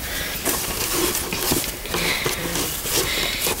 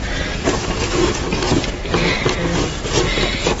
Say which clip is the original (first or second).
second